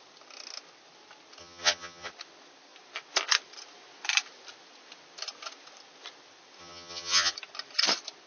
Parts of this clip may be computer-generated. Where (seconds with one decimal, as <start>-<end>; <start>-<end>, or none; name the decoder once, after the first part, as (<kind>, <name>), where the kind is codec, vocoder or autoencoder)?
1.4-2.1 (vocoder, HiFi-GAN); 6.6-7.3